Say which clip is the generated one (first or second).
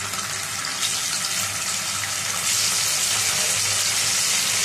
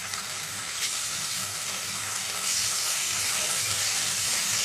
second